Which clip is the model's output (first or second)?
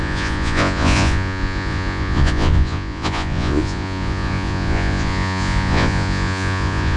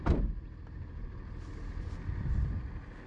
first